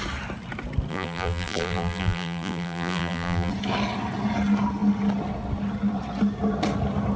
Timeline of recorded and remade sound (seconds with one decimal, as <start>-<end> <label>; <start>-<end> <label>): 0.0-0.9 recorded; 0.9-3.5 remade; 3.5-7.2 recorded